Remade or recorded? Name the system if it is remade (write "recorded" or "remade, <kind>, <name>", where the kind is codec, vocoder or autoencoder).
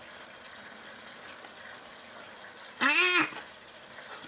recorded